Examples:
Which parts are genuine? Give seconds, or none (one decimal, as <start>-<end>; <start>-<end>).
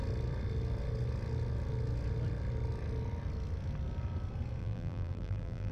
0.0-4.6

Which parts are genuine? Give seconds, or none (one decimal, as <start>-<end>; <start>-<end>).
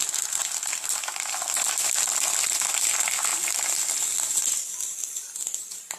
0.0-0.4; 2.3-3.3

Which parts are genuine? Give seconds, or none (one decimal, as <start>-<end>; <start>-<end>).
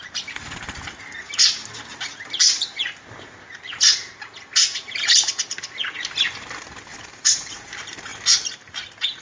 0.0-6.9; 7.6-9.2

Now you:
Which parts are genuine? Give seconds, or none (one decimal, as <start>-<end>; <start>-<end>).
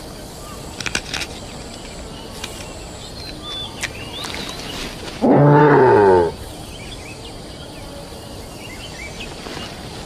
0.0-10.1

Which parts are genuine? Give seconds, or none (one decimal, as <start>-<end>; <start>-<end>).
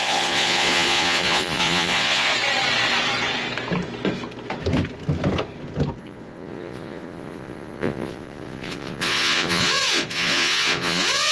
2.3-6.0